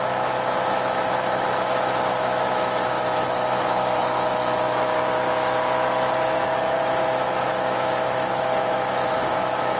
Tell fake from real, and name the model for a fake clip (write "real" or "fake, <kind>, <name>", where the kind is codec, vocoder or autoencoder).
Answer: fake, autoencoder, DAC-VAE